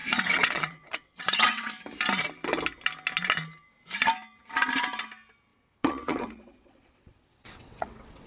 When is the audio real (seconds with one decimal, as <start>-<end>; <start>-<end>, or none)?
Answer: 1.7-5.5